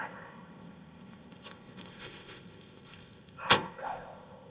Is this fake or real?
fake